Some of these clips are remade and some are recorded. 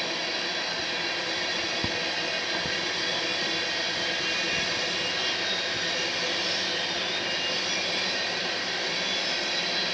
recorded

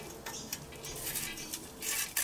recorded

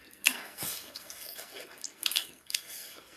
remade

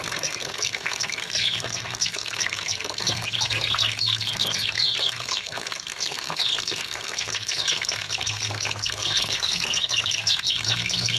remade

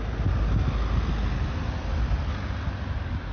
recorded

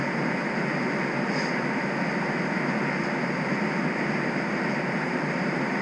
recorded